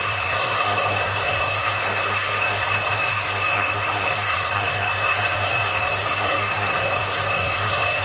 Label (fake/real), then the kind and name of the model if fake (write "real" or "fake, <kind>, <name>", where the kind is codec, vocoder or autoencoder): fake, codec, SNAC